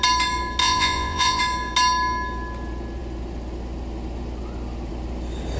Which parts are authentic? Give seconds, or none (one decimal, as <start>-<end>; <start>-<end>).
0.0-0.6; 1.4-5.6